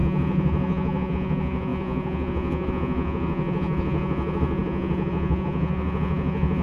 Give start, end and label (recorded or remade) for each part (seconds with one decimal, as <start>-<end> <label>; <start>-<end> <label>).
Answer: 0.0-6.6 remade